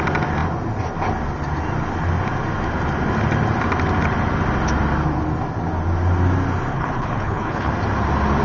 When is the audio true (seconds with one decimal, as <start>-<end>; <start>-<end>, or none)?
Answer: 0.0-6.7; 7.7-8.4

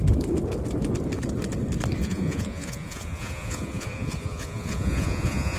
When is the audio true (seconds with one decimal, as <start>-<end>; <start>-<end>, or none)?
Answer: 0.0-2.0

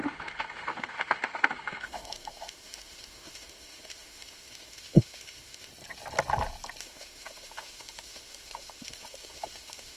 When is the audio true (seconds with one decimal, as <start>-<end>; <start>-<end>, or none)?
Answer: 5.7-6.8

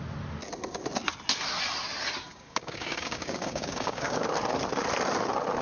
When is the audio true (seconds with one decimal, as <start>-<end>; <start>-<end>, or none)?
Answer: 0.0-2.3; 4.2-5.6

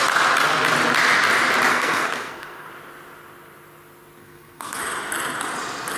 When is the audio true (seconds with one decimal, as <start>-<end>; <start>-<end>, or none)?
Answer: 0.0-1.7; 2.7-4.2; 4.8-6.0

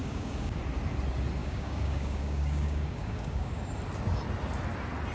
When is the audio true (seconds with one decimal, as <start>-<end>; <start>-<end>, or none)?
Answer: 0.6-1.4; 3.6-5.1